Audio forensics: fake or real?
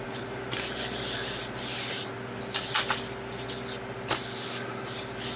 real